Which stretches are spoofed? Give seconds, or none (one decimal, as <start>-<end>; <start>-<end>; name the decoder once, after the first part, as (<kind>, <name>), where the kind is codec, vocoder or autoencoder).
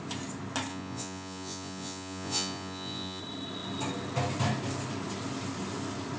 0.7-3.2 (vocoder, Vocos)